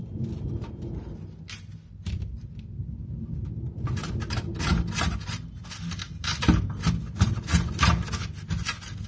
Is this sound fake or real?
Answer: real